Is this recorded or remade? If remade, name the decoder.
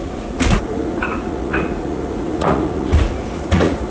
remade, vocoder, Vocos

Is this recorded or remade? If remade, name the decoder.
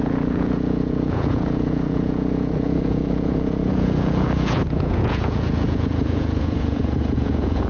remade, vocoder, Vocos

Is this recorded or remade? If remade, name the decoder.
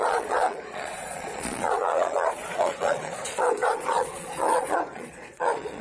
remade, vocoder, Vocos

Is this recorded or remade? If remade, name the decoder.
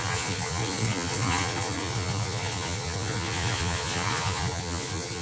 remade, vocoder, Vocos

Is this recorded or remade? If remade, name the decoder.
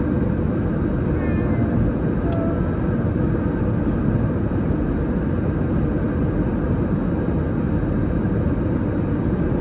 recorded